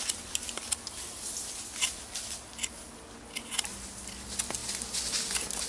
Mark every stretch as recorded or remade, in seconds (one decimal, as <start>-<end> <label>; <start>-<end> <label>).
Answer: 0.0-5.7 recorded